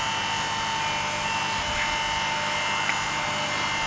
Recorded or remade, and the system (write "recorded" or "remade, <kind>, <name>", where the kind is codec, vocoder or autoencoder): recorded